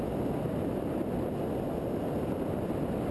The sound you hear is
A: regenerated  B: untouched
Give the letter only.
B